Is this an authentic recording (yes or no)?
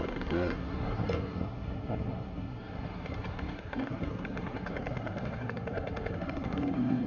no